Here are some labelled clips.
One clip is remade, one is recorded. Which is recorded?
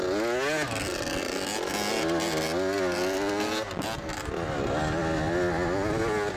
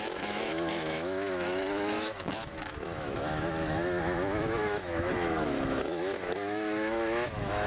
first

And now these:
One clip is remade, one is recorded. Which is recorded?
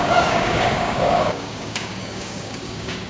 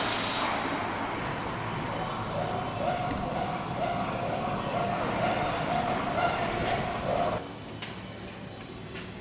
second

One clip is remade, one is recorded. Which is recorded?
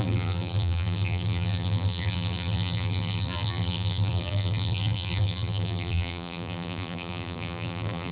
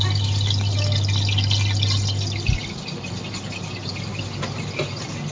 second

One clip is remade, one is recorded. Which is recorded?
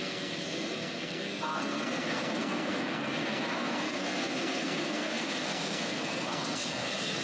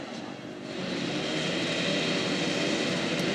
second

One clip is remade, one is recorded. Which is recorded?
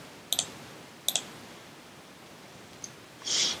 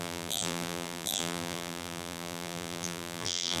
first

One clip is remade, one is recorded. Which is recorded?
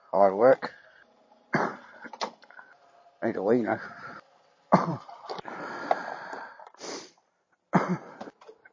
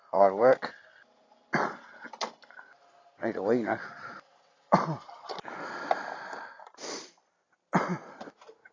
second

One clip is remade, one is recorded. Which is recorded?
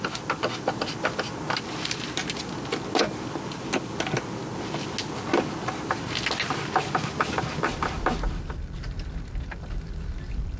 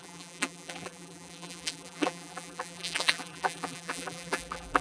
first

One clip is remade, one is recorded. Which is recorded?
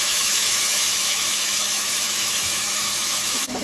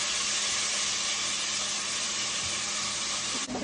second